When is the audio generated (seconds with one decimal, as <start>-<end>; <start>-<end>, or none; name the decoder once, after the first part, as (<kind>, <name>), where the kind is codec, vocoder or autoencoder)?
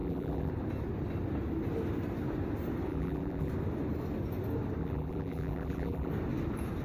0.0-0.5 (vocoder, BigVGAN v2); 2.9-3.5; 4.8-6.1